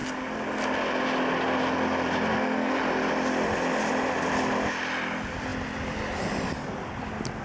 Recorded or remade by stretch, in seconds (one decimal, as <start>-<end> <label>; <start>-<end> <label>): 0.0-2.3 recorded; 2.3-2.8 remade; 2.8-7.4 recorded